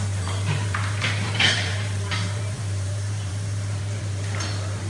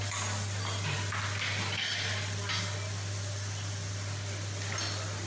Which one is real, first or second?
second